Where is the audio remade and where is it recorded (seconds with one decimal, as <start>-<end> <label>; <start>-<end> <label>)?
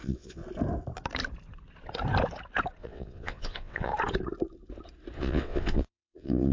0.0-0.4 remade; 0.4-2.8 recorded; 2.8-3.9 remade; 3.9-5.2 recorded; 5.2-6.5 remade